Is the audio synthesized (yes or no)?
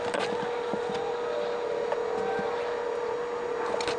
no